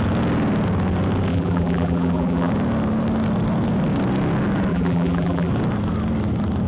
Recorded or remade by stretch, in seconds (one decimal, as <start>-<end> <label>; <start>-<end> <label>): 0.0-1.3 recorded; 1.3-2.5 remade; 2.5-4.7 recorded; 4.7-5.5 remade; 5.5-6.7 recorded